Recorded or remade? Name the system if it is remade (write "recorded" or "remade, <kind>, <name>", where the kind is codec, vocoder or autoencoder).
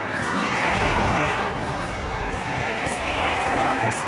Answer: remade, codec, SNAC